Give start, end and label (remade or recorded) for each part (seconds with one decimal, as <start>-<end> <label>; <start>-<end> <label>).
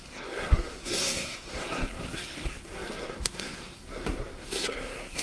0.0-5.2 remade